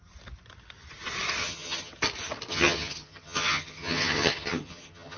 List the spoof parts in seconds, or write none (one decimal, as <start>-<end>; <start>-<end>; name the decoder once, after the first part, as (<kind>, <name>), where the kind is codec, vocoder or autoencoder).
1.4-1.9 (vocoder, HiFi-GAN); 2.5-5.2